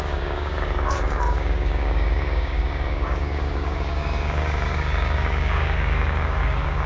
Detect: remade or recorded remade